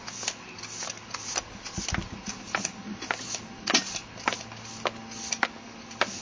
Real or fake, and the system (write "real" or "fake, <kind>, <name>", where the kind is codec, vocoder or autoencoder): real